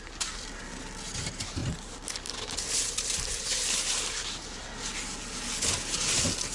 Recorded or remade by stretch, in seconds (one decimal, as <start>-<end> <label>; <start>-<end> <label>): 0.0-6.5 recorded